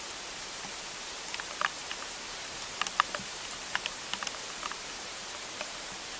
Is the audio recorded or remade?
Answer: remade